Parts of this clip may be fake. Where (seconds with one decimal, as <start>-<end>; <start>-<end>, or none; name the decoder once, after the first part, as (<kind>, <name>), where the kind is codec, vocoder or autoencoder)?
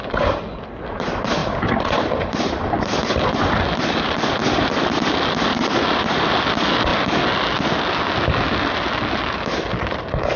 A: 1.4-5.1 (vocoder, BigVGAN v2)